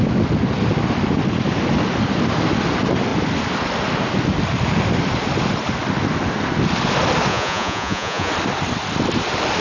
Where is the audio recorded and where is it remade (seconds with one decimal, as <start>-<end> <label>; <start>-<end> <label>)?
0.0-7.3 recorded; 7.3-8.3 remade; 8.3-9.6 recorded